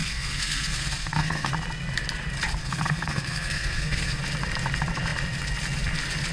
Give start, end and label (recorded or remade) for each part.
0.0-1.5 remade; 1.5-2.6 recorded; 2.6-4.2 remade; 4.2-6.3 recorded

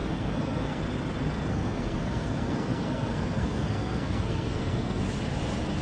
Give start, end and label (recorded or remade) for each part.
0.0-0.8 remade; 0.8-1.5 recorded; 1.5-5.0 remade; 5.0-5.8 recorded

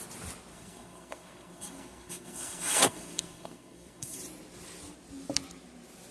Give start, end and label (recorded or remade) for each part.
0.0-0.5 recorded; 0.5-4.2 remade; 4.2-6.1 recorded

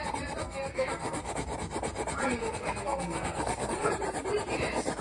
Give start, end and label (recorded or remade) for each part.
0.0-0.4 recorded; 0.4-1.3 remade; 1.3-2.4 recorded; 2.4-3.9 remade; 3.9-5.0 recorded

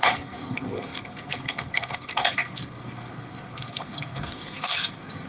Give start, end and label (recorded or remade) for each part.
0.0-5.3 remade

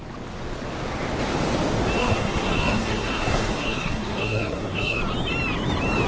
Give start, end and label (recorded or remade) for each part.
0.0-2.0 recorded; 2.0-5.0 remade; 5.0-6.1 recorded

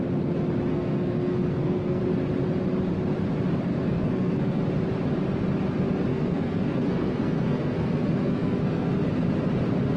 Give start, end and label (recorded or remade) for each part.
0.0-0.7 recorded; 0.7-2.0 remade; 2.0-3.7 recorded; 3.7-4.6 remade; 4.6-6.1 recorded; 6.1-8.9 remade; 8.9-10.0 recorded

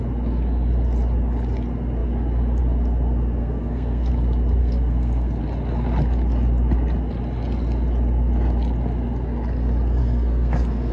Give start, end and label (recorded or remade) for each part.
0.0-3.4 recorded; 3.4-4.1 remade; 4.1-4.6 recorded; 4.6-5.4 remade; 5.4-10.0 recorded; 10.0-10.9 remade